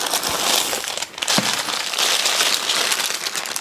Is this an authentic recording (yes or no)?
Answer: yes